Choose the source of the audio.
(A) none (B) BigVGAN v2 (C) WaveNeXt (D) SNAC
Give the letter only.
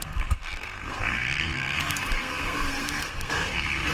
D